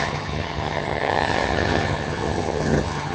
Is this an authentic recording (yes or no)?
no